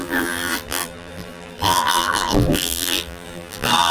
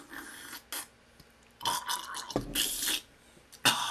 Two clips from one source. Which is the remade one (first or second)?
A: first